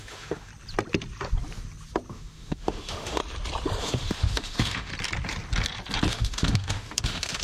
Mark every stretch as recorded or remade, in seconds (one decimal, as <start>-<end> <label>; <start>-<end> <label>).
0.0-0.5 remade; 0.5-2.1 recorded; 2.1-3.2 remade; 3.2-3.8 recorded; 3.8-4.9 remade; 4.9-6.1 recorded; 6.1-7.4 remade